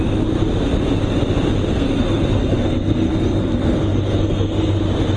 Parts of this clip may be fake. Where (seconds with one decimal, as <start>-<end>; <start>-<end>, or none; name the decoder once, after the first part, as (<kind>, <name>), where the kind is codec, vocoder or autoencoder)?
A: 1.7-4.8 (codec, SNAC)